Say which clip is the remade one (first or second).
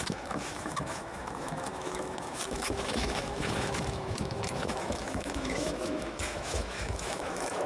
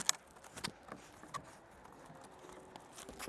first